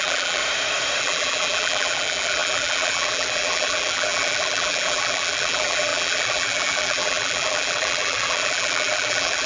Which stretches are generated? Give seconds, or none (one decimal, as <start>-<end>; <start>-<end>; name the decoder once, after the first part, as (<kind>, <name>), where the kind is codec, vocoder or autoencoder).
0.0-0.4 (vocoder, BigVGAN v2); 1.0-9.5